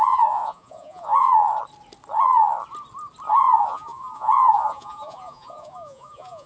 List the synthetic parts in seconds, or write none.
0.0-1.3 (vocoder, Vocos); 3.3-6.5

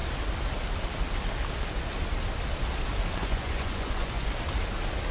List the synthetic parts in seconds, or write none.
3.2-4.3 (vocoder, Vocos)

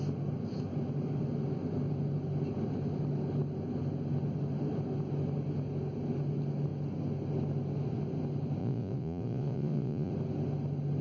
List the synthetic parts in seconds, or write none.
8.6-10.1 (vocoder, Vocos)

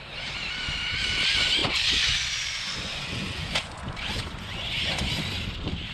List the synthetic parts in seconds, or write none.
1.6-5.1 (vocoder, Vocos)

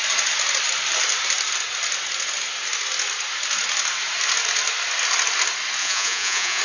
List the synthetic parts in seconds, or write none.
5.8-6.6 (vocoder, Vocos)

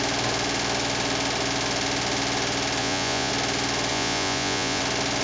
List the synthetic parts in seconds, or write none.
2.8-3.3 (vocoder, Vocos); 3.9-4.8

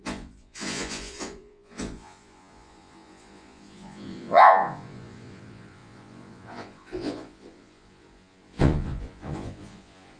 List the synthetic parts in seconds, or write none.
0.0-10.2 (vocoder, Vocos)